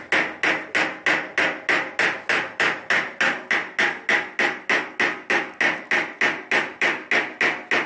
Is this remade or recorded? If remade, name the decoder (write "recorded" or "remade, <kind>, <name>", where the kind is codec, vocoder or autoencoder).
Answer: recorded